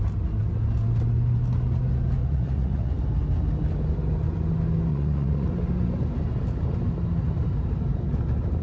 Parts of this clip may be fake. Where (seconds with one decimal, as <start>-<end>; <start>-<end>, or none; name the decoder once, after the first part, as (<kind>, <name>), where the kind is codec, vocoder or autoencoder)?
2.2-2.9 (vocoder, Vocos); 4.9-5.5